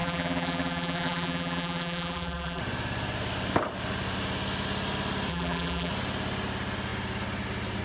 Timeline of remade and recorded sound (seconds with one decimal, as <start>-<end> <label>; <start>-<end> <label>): 0.0-2.6 remade; 2.6-5.3 recorded; 5.3-5.9 remade; 5.9-7.8 recorded